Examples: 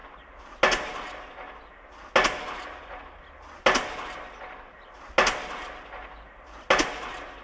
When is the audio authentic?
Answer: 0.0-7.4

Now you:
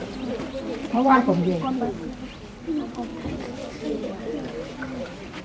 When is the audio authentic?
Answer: 0.0-0.8; 1.9-5.4

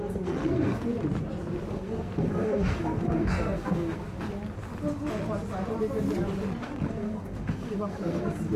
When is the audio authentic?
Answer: 0.9-1.7; 4.0-6.6

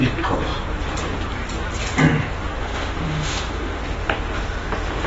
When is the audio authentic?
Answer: 0.0-2.6; 3.8-5.1

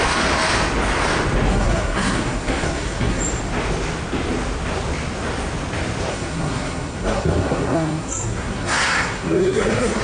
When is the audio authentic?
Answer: 0.0-1.5; 3.2-6.1

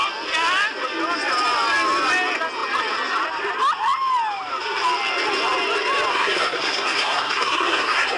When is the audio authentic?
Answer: 0.0-6.1

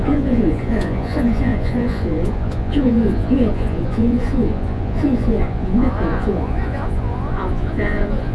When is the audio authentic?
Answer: none